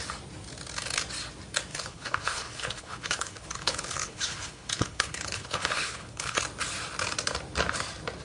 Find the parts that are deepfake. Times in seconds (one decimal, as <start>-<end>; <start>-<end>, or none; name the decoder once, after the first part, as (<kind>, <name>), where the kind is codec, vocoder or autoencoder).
1.7-6.4 (codec, HILCodec)